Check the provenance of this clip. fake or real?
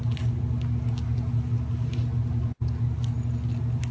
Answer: real